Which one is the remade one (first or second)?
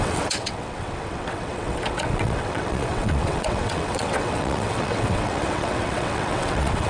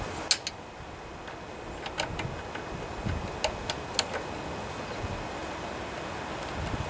first